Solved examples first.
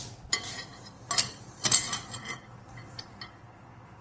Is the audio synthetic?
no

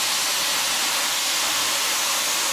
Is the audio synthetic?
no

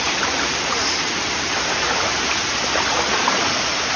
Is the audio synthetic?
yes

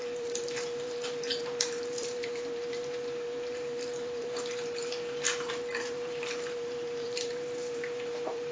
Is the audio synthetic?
yes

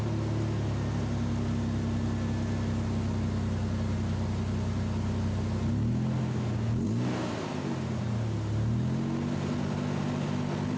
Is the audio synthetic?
no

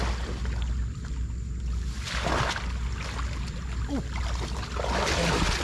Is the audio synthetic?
no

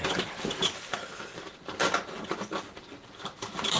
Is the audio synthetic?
yes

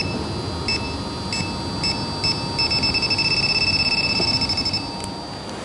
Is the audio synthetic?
no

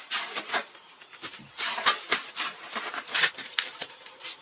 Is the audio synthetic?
yes